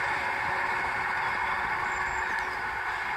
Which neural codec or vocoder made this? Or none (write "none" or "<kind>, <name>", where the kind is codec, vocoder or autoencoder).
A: none